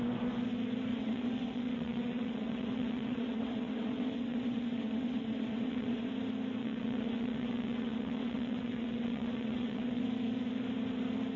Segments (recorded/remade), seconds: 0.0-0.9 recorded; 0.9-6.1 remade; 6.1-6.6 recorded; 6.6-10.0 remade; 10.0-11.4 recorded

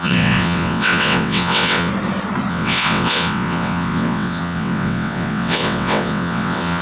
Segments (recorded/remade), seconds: 0.0-1.9 remade; 1.9-2.5 recorded; 2.5-6.8 remade